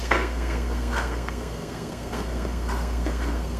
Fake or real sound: fake